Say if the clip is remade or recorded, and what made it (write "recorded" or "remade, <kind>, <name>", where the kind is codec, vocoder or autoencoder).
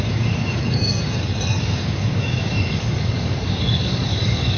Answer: remade, codec, DAC